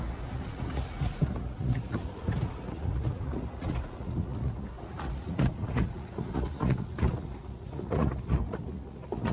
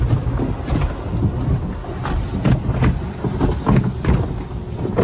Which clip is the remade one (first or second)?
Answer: first